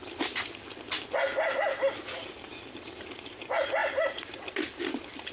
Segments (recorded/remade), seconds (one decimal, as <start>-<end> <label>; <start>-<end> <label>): 0.0-5.3 recorded